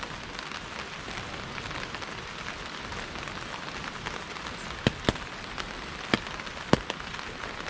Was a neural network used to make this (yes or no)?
no